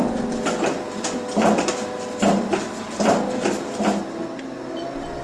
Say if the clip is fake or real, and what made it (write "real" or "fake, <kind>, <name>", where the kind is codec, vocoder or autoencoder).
real